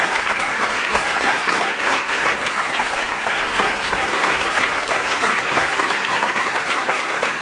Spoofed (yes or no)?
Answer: yes